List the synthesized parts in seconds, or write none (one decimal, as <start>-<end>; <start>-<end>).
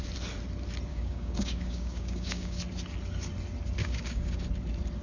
0.9-2.6; 3.8-4.4